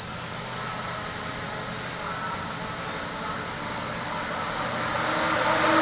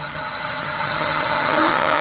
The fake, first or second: second